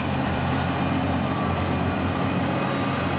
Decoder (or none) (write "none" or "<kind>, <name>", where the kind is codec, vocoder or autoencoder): vocoder, BigVGAN v2